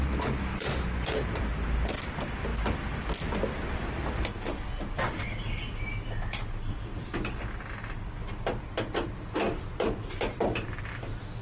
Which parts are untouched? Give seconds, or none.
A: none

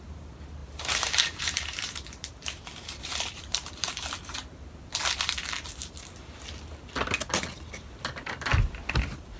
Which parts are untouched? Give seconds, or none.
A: 0.0-0.6; 3.9-9.4